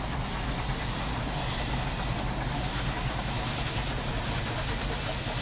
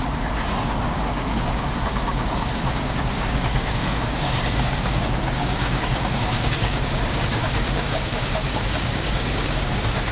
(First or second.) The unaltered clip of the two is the first